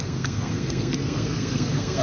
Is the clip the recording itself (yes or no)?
no